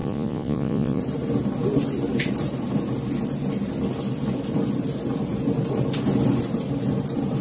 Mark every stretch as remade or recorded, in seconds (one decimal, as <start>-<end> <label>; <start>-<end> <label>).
0.0-1.0 remade; 1.0-7.4 recorded